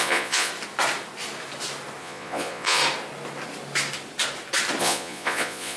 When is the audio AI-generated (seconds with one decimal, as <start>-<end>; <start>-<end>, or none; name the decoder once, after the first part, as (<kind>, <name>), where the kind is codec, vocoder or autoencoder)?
0.0-0.5 (vocoder, Vocos); 2.0-2.8; 4.8-5.8